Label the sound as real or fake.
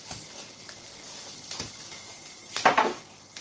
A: real